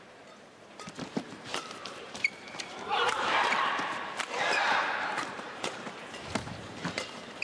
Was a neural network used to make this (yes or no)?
yes